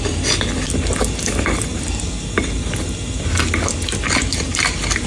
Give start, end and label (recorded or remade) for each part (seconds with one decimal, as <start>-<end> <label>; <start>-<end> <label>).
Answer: 0.0-5.1 recorded